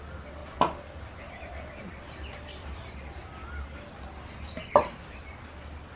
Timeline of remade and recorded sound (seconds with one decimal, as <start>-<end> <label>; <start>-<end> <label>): 0.0-6.0 recorded